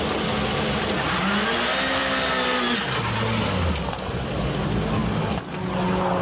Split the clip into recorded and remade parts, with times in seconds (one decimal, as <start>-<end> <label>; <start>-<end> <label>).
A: 0.0-6.2 recorded